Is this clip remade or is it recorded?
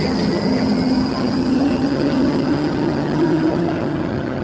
remade